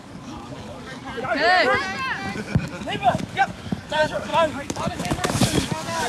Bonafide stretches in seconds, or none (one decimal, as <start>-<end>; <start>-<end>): 1.0-2.3